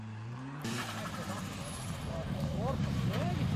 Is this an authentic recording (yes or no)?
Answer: no